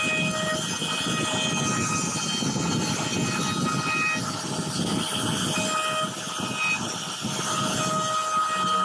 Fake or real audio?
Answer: real